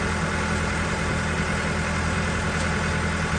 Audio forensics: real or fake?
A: real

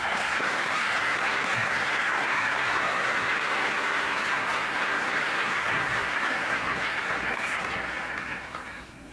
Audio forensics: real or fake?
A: fake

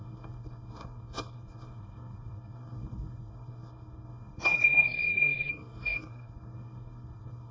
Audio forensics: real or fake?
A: fake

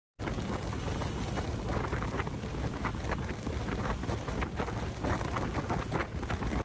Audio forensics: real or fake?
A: real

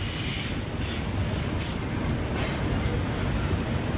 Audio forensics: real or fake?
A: real